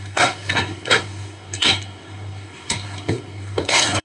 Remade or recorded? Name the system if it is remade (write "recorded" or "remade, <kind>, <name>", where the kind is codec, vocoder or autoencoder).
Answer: remade, codec, SNAC